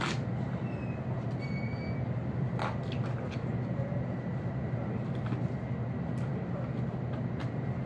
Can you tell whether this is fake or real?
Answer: real